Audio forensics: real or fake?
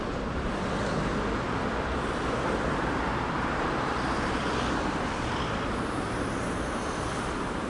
fake